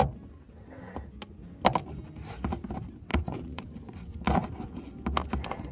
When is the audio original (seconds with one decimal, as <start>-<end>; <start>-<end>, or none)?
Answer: 0.0-3.1; 3.9-5.7